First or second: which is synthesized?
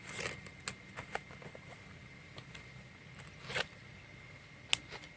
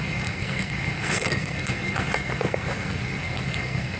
second